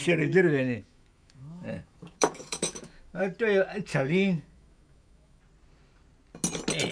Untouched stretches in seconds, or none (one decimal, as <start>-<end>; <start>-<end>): 3.2-3.9; 5.4-6.9